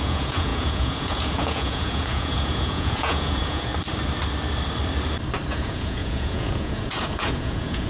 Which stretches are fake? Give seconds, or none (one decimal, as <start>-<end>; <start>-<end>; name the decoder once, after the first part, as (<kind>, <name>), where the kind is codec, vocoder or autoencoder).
0.0-3.7 (vocoder, Vocos); 5.5-7.9